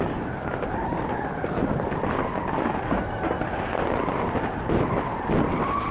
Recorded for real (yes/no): yes